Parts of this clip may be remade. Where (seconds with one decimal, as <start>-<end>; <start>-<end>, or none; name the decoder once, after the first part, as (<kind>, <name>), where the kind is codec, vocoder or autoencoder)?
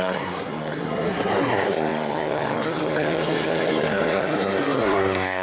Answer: 0.0-5.4 (codec, SNAC)